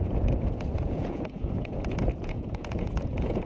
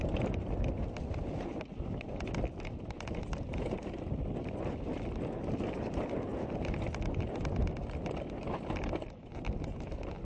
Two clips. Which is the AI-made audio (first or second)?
first